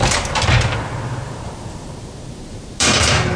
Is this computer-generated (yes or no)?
yes